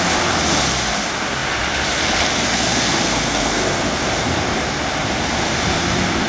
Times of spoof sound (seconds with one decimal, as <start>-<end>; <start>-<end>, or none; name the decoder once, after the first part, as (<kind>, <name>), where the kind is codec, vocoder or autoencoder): 2.5-3.8 (codec, SNAC)